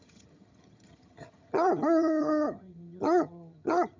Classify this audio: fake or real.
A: fake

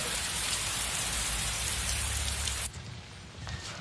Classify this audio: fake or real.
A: fake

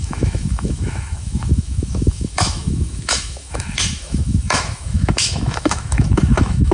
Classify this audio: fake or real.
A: fake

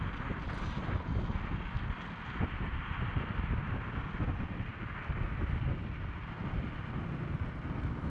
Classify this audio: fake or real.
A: real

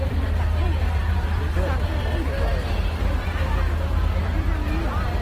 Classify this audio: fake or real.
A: fake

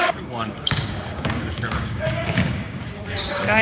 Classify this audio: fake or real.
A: fake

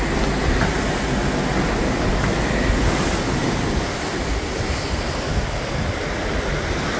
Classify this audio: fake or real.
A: real